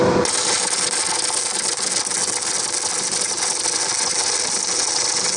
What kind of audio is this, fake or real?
real